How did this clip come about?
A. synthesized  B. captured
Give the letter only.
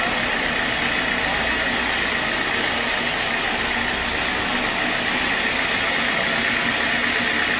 B